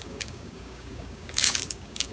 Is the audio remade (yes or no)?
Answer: yes